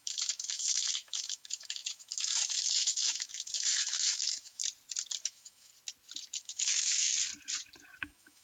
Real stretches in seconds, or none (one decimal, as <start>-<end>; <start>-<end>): 4.6-5.2; 5.7-6.4; 7.1-8.0